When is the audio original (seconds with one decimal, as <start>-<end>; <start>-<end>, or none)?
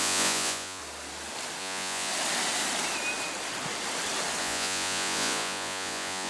0.8-1.6; 2.1-4.4